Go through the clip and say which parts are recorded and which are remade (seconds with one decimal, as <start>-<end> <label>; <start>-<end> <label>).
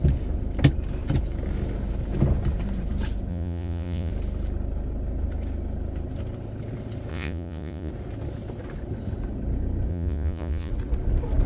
0.0-3.3 recorded; 3.3-4.1 remade; 4.1-7.1 recorded; 7.1-7.9 remade; 7.9-9.9 recorded; 9.9-10.7 remade; 10.7-11.5 recorded